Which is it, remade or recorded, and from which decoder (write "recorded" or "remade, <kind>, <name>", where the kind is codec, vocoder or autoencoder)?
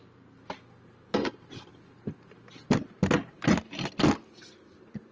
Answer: recorded